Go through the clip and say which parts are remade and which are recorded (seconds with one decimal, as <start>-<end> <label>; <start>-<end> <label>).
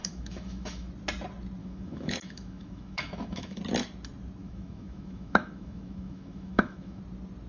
0.0-0.9 remade; 0.9-1.6 recorded; 1.6-3.6 remade; 3.6-4.4 recorded; 4.4-7.0 remade; 7.0-7.5 recorded